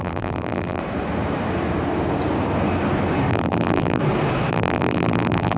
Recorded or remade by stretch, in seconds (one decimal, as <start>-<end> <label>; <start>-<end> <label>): 0.0-0.8 remade; 0.8-3.3 recorded; 3.3-4.0 remade; 4.0-4.5 recorded; 4.5-5.6 remade

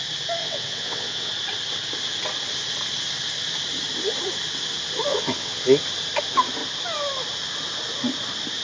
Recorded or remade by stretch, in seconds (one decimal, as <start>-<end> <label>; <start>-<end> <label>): 0.0-0.4 recorded; 0.4-1.3 remade; 1.3-5.1 recorded; 5.1-5.6 remade; 5.6-8.6 recorded

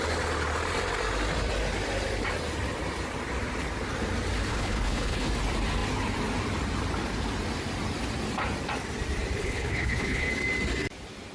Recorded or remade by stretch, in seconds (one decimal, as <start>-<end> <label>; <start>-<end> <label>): 0.0-4.5 recorded; 4.5-5.3 remade; 5.3-9.4 recorded; 9.4-10.3 remade; 10.3-11.3 recorded

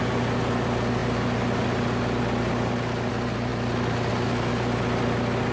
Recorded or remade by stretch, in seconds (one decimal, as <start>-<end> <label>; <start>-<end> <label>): 0.0-5.5 recorded

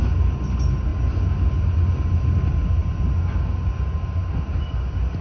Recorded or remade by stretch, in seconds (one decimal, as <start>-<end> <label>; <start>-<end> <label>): 0.0-5.2 recorded

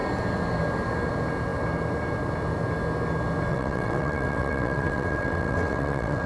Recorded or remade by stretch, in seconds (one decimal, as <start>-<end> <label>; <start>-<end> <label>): 0.0-3.5 recorded; 3.5-6.3 remade